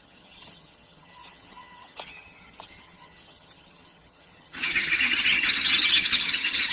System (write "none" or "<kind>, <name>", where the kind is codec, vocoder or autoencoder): vocoder, HiFi-GAN